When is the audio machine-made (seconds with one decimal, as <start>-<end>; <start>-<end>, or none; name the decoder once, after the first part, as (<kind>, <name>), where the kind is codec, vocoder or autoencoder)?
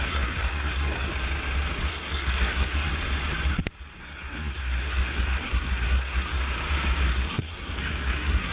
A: 0.0-1.1 (codec, SNAC); 1.9-2.9; 4.0-6.4; 7.1-8.5